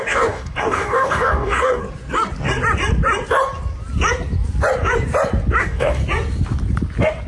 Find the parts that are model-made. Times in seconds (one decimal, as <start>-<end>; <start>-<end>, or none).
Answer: 0.0-1.8; 5.6-6.0